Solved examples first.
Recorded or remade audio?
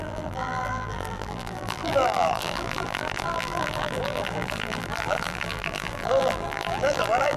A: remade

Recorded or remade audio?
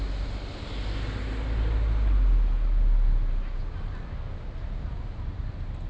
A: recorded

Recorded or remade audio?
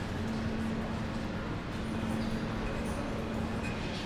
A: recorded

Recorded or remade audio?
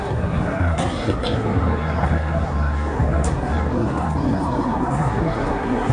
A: remade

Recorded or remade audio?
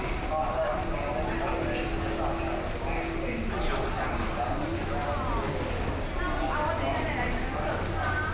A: recorded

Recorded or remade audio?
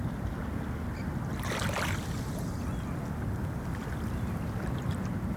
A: recorded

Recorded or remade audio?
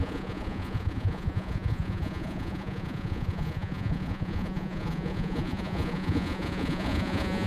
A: remade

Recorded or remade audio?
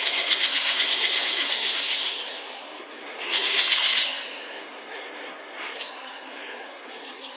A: remade